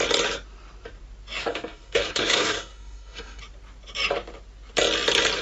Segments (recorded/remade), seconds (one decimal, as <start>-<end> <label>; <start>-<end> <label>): 0.0-1.4 recorded; 1.4-3.4 remade; 3.4-5.4 recorded